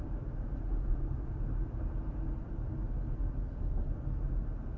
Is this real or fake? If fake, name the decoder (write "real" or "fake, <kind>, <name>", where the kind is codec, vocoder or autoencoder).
real